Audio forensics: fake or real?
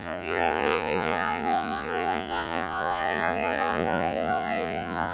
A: fake